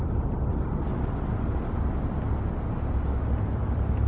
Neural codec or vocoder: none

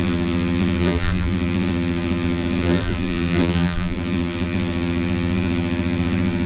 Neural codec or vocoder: vocoder, BigVGAN v2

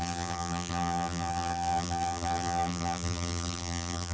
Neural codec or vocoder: vocoder, BigVGAN v2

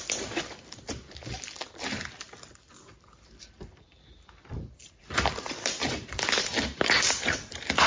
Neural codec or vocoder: vocoder, BigVGAN v2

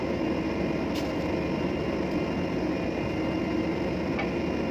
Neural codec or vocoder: none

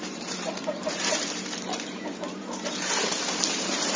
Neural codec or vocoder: vocoder, BigVGAN v2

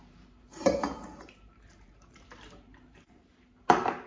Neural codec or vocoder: vocoder, BigVGAN v2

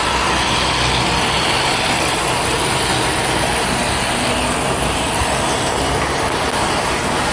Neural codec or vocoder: none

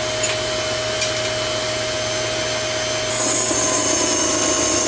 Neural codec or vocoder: none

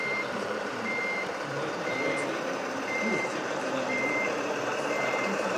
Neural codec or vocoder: vocoder, BigVGAN v2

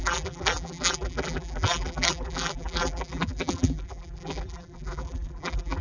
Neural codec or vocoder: vocoder, BigVGAN v2